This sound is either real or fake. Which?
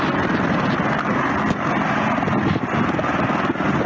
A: real